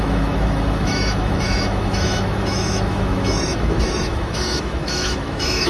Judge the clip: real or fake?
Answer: fake